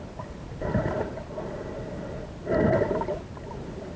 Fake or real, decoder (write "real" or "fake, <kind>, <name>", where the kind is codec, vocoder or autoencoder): real